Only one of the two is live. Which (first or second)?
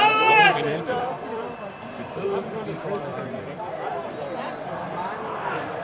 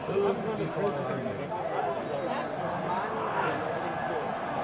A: second